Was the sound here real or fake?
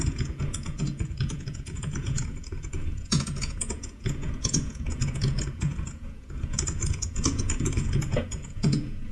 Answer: fake